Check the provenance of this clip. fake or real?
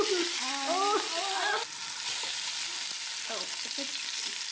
real